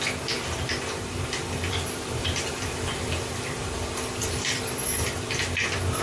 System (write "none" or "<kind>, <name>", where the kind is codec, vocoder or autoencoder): vocoder, BigVGAN v2